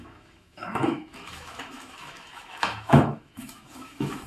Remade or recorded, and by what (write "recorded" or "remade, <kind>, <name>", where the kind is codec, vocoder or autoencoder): remade, autoencoder, DAC-VAE